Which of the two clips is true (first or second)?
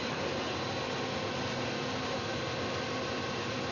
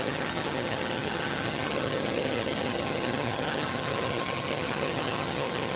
first